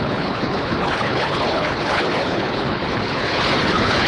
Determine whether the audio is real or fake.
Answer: fake